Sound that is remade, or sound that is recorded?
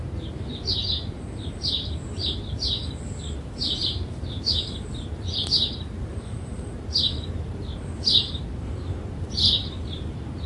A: remade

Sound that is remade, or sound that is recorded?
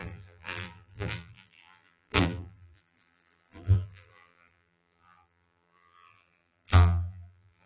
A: remade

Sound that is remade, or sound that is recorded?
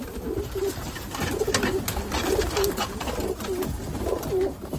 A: recorded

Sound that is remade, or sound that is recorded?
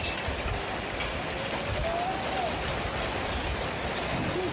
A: recorded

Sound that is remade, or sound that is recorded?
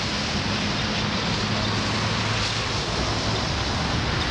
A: recorded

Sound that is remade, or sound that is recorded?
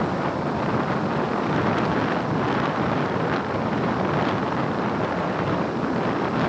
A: remade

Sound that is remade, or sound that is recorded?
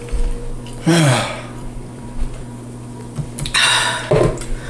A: remade